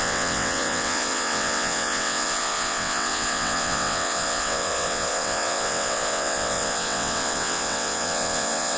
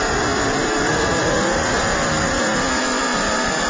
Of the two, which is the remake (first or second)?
first